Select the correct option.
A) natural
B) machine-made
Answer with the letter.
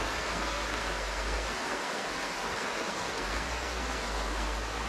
B